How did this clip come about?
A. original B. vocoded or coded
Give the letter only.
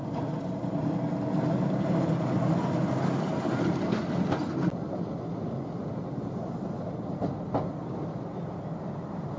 A